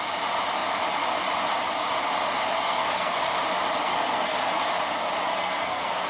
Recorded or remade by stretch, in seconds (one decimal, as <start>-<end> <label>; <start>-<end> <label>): 0.0-2.5 recorded; 2.5-3.4 remade; 3.4-3.8 recorded; 3.8-4.6 remade; 4.6-5.3 recorded; 5.3-6.1 remade

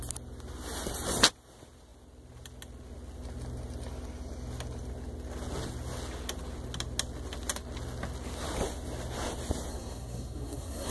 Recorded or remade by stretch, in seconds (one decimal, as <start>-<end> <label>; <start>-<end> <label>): 0.0-9.7 recorded; 9.7-10.9 remade